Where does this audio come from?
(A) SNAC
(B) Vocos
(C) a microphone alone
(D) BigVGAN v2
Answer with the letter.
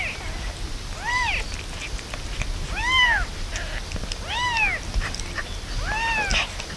C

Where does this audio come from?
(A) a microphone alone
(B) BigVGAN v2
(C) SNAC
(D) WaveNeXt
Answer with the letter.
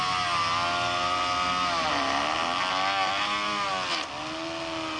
A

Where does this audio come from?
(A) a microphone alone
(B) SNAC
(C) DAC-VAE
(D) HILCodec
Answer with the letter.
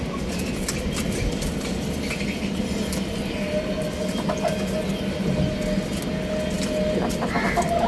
A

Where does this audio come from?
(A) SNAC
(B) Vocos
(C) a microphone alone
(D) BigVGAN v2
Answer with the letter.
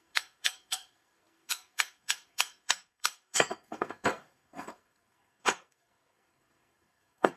A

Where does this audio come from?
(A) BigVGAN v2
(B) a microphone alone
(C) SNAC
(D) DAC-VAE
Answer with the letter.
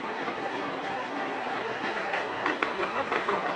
C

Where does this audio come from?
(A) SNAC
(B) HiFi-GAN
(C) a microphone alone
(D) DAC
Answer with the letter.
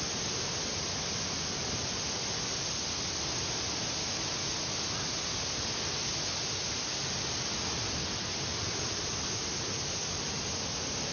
C